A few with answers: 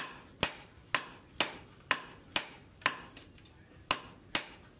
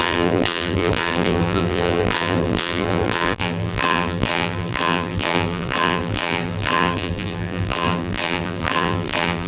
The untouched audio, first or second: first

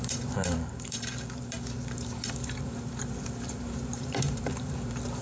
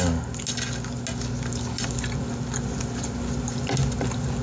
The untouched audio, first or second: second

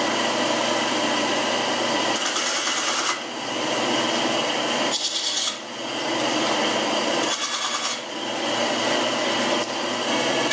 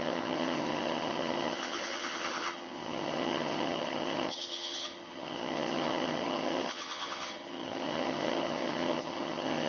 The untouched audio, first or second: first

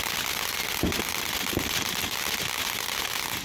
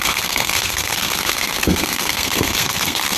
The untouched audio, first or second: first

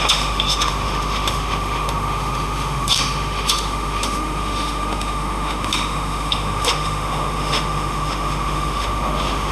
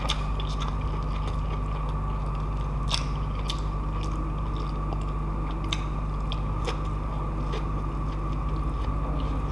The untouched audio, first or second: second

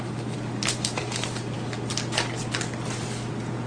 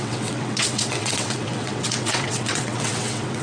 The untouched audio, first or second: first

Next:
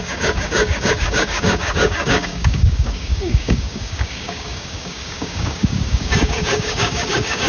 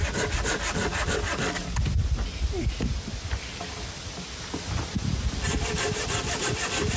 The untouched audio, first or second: second